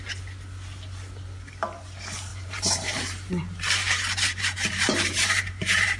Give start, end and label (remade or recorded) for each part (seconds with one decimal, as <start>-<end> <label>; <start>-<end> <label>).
0.0-2.3 recorded; 2.3-6.0 remade

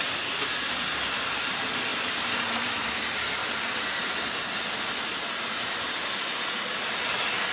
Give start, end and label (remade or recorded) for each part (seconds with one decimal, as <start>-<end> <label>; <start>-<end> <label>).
0.0-7.5 remade

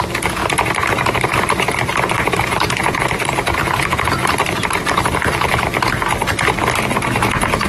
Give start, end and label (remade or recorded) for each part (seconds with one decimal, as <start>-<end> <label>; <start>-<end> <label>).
0.0-0.4 recorded; 0.4-3.8 remade; 3.8-4.2 recorded; 4.2-5.0 remade; 5.0-7.7 recorded

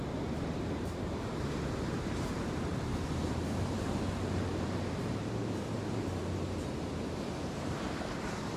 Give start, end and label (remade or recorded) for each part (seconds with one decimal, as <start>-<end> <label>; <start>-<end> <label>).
0.0-2.9 remade; 2.9-3.6 recorded; 3.6-8.6 remade

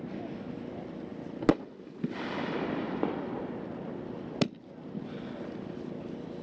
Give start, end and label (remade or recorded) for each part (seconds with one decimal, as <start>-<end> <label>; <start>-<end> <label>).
0.0-6.4 recorded

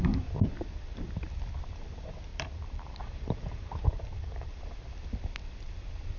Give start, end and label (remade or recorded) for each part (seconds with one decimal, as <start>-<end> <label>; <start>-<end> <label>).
0.0-0.5 remade; 0.5-2.3 recorded; 2.3-4.5 remade; 4.5-6.2 recorded

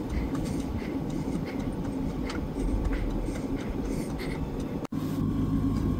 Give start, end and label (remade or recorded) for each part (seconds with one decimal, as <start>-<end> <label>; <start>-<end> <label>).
0.0-6.0 recorded